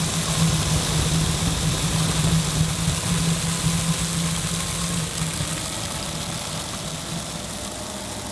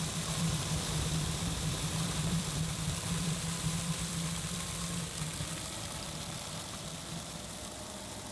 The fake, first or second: second